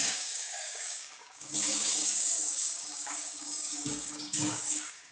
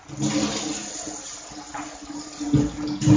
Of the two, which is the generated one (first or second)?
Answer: first